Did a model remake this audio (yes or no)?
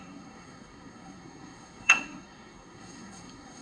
yes